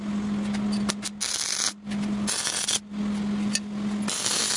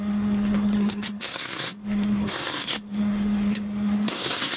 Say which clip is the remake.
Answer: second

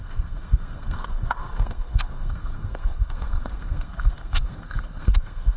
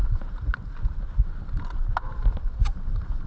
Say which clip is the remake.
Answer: first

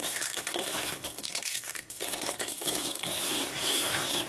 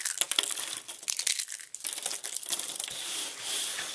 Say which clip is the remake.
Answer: first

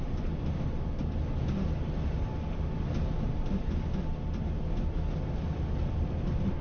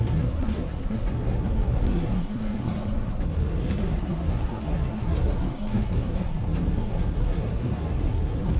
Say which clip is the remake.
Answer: second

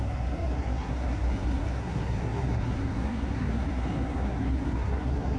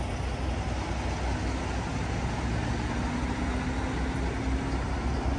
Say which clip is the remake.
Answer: first